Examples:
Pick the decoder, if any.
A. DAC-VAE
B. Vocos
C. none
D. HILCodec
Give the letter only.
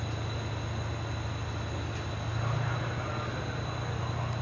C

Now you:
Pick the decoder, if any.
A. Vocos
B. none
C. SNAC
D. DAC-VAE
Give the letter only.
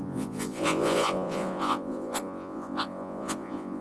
A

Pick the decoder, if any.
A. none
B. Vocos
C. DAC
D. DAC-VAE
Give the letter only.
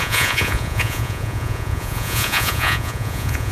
B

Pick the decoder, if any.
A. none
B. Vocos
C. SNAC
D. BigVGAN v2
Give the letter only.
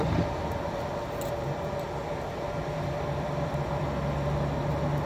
A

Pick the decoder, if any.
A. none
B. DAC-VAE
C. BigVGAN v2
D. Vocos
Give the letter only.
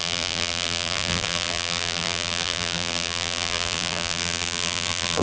C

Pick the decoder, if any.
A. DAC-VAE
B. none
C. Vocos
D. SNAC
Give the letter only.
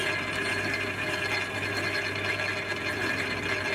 B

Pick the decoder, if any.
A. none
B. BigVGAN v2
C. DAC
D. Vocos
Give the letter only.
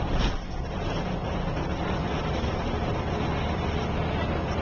A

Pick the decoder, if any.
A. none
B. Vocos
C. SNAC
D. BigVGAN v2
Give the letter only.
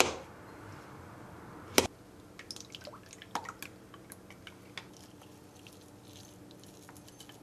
A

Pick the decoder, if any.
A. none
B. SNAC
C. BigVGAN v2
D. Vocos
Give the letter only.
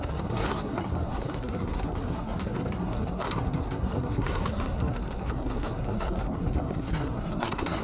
B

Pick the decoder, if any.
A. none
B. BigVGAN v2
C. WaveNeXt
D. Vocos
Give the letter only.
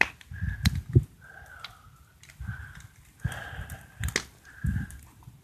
A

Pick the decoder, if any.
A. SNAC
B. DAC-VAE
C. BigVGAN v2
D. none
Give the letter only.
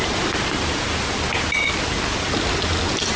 D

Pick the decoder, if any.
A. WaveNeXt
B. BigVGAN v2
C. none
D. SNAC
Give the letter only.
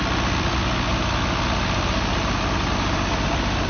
C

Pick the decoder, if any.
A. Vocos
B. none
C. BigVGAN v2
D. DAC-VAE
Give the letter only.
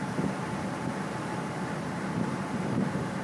C